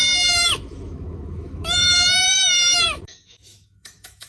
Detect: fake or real fake